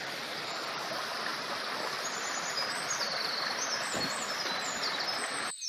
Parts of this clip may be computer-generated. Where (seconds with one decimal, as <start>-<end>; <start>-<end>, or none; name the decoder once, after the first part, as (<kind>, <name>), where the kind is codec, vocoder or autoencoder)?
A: none